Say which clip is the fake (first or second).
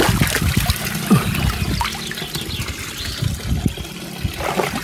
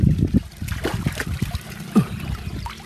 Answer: second